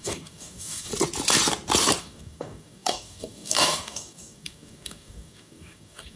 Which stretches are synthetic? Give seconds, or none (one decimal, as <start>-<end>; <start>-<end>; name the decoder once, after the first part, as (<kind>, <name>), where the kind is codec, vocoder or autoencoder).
0.0-0.9 (codec, DAC); 2.0-6.2